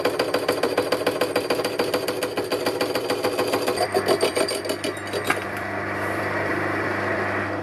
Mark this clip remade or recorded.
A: remade